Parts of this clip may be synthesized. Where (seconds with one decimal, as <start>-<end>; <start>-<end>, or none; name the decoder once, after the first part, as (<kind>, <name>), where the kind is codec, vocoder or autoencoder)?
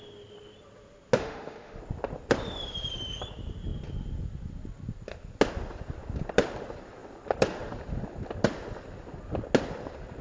1.2-1.8 (autoencoder, DAC-VAE)